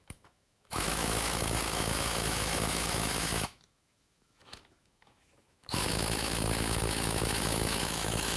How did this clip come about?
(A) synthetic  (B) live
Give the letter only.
A